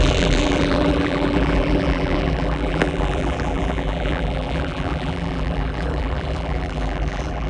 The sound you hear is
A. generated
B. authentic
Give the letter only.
A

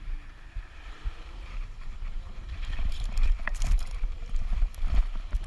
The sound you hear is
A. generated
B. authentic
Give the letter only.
A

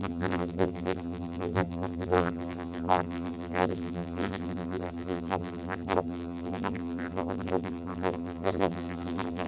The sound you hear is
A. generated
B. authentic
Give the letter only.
A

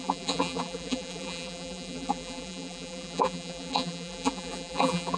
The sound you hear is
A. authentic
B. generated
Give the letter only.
B